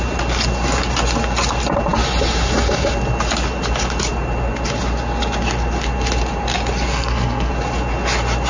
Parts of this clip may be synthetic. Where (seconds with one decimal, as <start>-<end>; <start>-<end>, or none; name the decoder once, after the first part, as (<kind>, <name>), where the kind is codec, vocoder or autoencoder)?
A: 6.9-7.5 (codec, SNAC)